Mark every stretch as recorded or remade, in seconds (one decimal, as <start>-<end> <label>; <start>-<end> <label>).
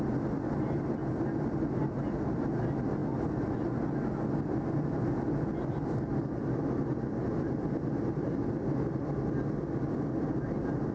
0.0-10.9 recorded